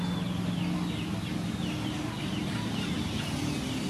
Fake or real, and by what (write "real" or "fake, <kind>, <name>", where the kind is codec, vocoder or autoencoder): real